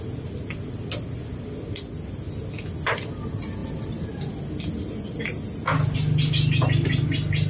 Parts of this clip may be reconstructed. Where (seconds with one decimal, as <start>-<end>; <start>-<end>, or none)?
none